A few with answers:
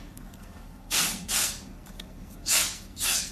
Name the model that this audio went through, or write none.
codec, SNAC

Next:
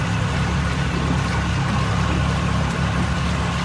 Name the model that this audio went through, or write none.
none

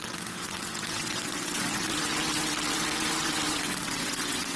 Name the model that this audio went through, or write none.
vocoder, WaveNeXt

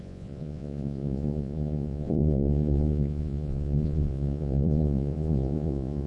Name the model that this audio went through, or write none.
vocoder, Vocos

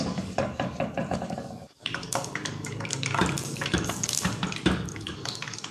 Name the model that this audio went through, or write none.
codec, DAC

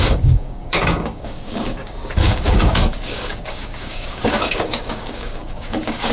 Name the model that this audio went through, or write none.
codec, DAC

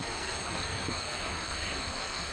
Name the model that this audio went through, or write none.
codec, SNAC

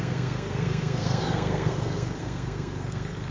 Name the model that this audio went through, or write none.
codec, SNAC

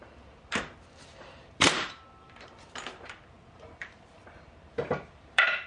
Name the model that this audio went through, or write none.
vocoder, BigVGAN v2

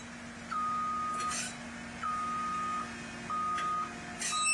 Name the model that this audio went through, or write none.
none